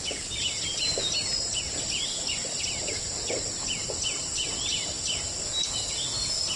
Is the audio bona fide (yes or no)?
yes